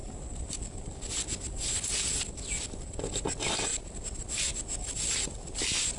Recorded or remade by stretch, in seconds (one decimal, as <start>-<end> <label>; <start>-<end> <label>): 0.0-6.0 recorded